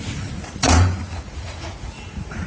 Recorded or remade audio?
remade